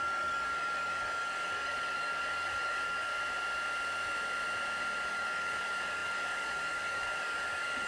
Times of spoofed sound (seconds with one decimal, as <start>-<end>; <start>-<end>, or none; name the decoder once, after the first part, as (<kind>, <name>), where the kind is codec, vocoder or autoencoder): 0.0-3.1 (codec, DAC); 5.1-7.9